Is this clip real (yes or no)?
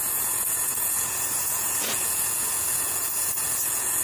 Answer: no